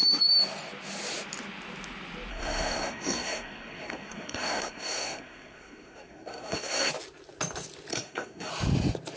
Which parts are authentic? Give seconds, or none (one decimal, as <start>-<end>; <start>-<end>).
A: 0.0-2.3; 6.9-7.9; 8.5-9.2